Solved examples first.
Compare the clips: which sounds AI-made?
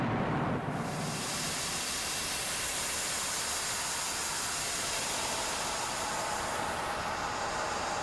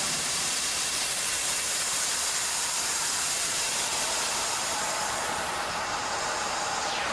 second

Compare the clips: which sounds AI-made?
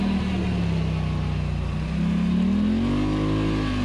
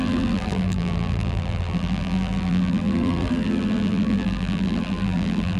second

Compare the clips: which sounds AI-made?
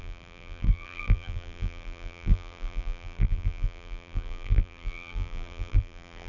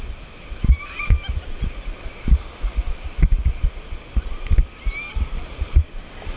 first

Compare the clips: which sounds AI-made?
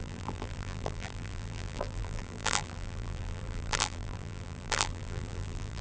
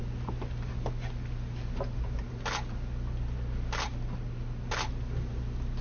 first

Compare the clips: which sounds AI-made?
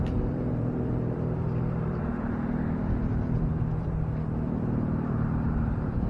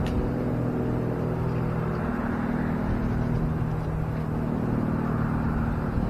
first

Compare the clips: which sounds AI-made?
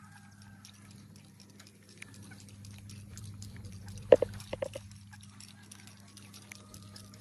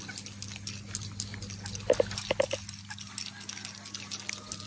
first